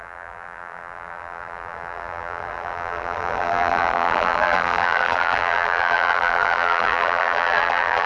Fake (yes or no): yes